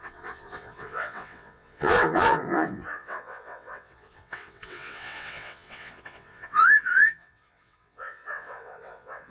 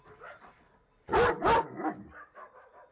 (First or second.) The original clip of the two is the second